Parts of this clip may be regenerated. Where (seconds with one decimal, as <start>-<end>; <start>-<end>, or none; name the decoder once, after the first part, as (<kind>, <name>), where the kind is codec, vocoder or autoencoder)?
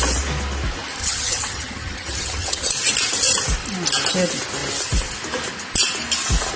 1.0-2.7 (vocoder, HiFi-GAN)